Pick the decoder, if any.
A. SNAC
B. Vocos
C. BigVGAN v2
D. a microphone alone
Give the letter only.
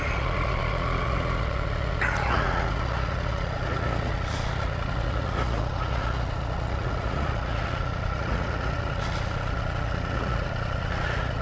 B